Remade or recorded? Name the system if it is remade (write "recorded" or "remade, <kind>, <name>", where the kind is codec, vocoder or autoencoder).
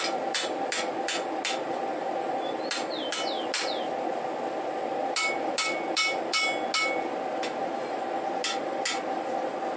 recorded